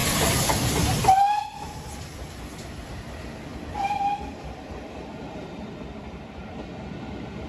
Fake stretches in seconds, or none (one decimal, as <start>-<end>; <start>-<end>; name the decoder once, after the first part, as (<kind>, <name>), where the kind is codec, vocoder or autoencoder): none